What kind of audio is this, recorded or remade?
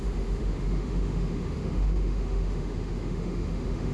remade